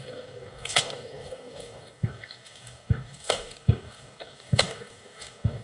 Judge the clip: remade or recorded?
remade